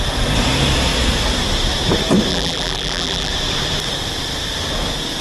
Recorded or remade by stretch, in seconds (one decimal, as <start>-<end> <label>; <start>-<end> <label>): 0.0-2.3 recorded; 2.3-3.3 remade; 3.3-5.2 recorded